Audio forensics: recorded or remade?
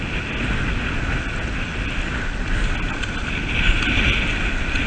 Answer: recorded